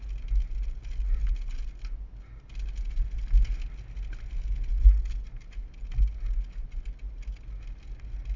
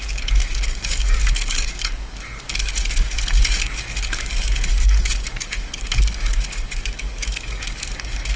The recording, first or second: first